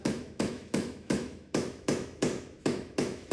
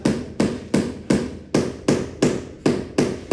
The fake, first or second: first